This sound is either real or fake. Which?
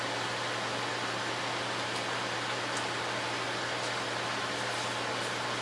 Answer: real